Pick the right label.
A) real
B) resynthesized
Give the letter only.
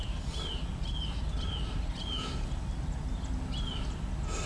A